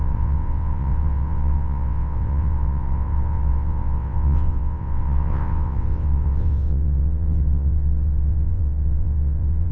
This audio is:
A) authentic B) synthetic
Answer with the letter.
B